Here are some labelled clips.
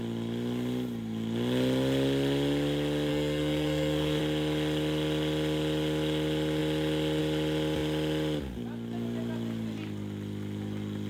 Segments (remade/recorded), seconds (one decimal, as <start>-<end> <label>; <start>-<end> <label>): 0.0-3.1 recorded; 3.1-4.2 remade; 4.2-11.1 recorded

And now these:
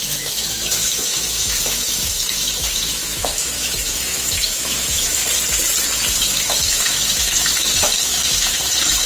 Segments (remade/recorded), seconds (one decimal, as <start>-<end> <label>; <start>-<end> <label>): 0.0-5.2 remade; 5.2-6.1 recorded; 6.1-9.1 remade

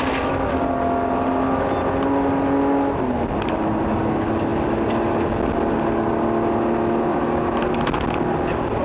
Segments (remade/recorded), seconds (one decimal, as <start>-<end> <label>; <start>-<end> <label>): 0.0-7.1 recorded; 7.1-7.7 remade; 7.7-8.8 recorded

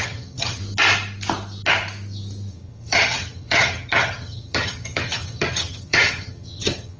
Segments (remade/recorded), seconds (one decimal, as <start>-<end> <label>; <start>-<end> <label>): 0.0-0.6 remade; 0.6-2.5 recorded; 2.5-7.0 remade

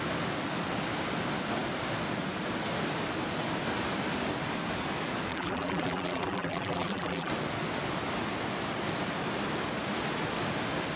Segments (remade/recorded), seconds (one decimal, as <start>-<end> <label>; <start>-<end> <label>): 0.0-5.3 recorded; 5.3-7.3 remade; 7.3-11.0 recorded

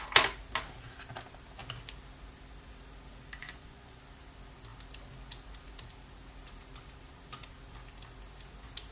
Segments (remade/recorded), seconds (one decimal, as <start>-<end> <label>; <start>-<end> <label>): 0.0-3.4 recorded; 3.4-4.0 remade; 4.0-8.9 recorded

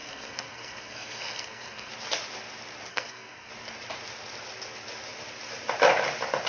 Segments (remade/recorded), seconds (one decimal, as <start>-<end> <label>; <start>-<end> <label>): 0.0-1.9 remade; 1.9-2.9 recorded; 2.9-3.5 remade; 3.5-6.5 recorded

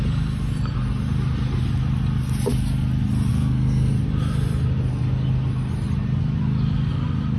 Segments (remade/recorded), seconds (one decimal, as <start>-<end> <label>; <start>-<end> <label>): 0.0-3.3 recorded; 3.3-3.9 remade; 3.9-7.4 recorded